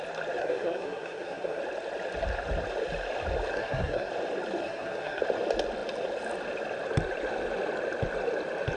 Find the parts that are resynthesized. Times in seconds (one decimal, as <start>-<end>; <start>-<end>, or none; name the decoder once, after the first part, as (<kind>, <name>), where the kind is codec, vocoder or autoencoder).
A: 0.4-1.6 (codec, SNAC); 3.5-4.1; 4.6-5.2